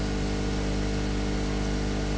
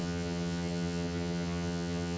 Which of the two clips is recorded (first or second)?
first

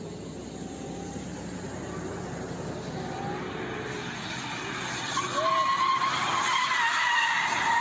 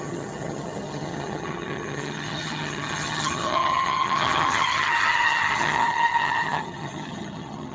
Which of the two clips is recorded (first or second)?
first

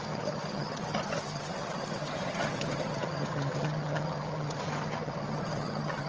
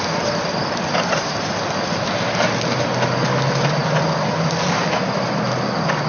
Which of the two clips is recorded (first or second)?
second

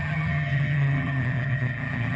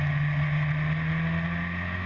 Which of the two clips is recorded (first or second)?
second